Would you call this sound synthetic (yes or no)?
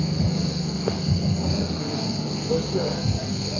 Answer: yes